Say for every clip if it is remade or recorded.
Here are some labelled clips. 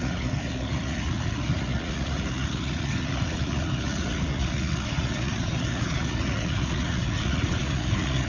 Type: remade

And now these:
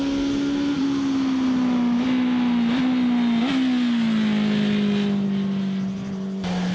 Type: recorded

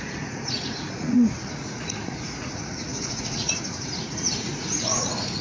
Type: remade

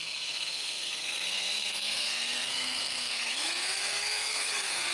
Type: remade